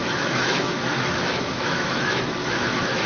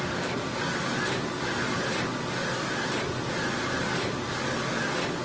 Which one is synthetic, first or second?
first